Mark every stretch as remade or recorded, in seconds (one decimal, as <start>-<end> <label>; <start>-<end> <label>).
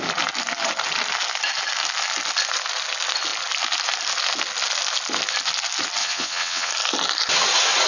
0.0-6.0 recorded; 6.0-6.7 remade; 6.7-7.9 recorded